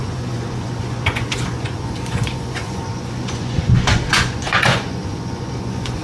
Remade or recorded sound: remade